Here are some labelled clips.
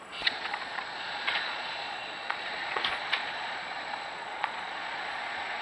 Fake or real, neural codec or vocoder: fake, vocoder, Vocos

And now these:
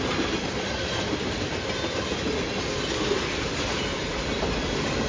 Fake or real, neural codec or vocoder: real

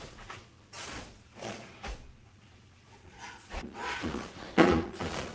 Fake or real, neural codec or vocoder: fake, vocoder, Vocos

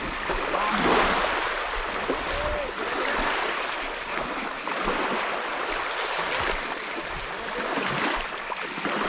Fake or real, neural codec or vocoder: real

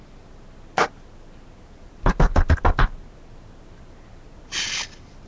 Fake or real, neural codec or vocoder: real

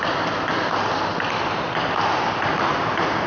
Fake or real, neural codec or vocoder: real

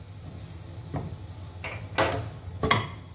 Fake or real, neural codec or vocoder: real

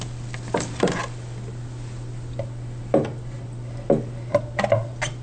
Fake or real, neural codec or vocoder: real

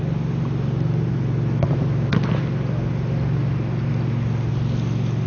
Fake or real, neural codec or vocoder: real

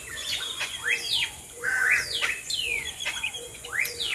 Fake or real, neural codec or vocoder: fake, vocoder, Vocos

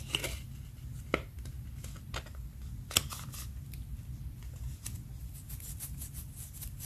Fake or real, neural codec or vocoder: real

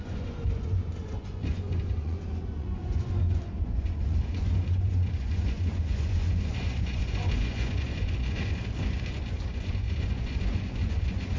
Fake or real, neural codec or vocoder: fake, vocoder, Vocos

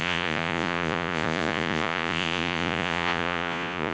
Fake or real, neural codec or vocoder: fake, vocoder, Vocos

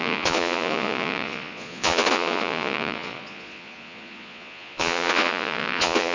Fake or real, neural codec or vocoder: fake, vocoder, Vocos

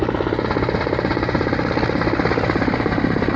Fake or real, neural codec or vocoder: real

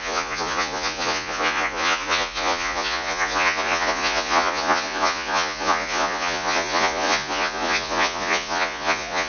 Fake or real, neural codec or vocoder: fake, vocoder, Vocos